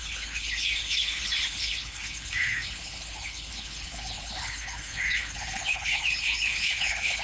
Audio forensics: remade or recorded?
remade